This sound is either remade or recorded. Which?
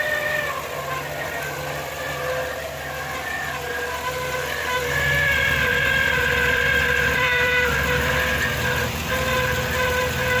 remade